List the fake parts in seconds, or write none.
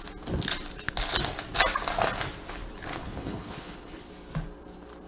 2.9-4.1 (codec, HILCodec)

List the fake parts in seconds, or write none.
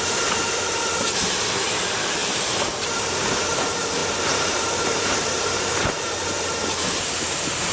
0.0-7.7 (vocoder, BigVGAN v2)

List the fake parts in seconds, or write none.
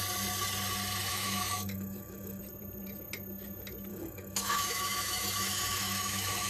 1.1-2.4 (autoencoder, DAC-VAE); 3.9-6.5